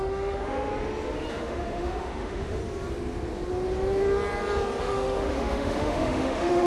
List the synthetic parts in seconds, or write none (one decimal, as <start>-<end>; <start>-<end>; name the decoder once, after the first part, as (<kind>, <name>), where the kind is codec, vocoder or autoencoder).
0.0-0.7 (autoencoder, DAC-VAE); 1.3-2.6; 4.8-6.7